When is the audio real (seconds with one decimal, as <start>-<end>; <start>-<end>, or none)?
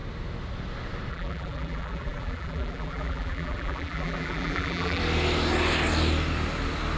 0.0-1.1; 5.0-7.0